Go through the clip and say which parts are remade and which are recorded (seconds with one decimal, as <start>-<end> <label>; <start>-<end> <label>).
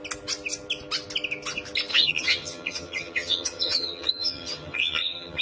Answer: 0.0-1.9 recorded; 1.9-5.4 remade